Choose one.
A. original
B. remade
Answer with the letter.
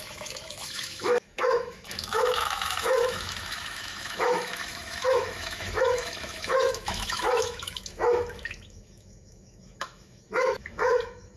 B